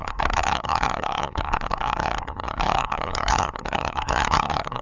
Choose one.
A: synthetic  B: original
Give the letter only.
A